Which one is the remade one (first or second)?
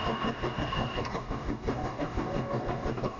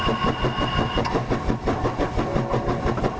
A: first